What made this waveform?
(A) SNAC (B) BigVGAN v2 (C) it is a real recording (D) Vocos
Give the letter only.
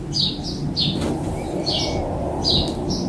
C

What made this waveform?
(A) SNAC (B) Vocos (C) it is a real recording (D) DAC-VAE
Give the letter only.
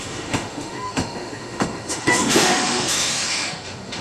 D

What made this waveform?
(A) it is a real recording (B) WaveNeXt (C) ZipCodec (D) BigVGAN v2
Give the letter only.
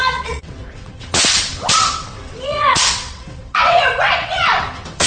B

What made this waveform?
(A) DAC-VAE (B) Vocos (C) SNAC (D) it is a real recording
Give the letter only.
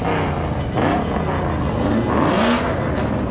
D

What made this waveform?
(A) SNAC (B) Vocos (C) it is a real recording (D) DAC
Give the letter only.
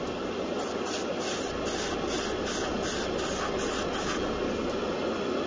C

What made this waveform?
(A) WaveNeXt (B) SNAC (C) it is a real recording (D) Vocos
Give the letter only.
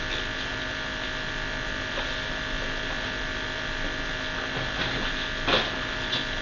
C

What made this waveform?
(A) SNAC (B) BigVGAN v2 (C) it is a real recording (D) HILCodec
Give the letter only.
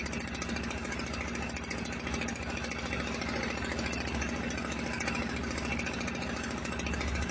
C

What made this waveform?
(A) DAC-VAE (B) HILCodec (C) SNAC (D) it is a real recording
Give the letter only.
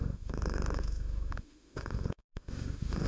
A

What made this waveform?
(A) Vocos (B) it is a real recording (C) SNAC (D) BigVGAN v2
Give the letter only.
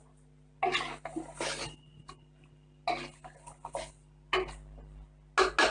B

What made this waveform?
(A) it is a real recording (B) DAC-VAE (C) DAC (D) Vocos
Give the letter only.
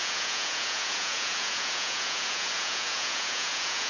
D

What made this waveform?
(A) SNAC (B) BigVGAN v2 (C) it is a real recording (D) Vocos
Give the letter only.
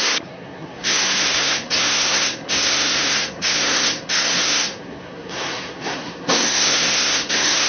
A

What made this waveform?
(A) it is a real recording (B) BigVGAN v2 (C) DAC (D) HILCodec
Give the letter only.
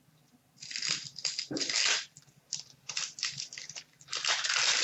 A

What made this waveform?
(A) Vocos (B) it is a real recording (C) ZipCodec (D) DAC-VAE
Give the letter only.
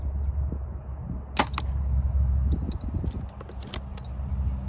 B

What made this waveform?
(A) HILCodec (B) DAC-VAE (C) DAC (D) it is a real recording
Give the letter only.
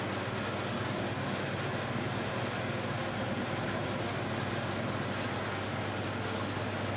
D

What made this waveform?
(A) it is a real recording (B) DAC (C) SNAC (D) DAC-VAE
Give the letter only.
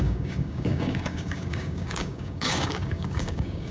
B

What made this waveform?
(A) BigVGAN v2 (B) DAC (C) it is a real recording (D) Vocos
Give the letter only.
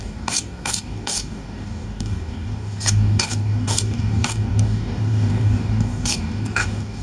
B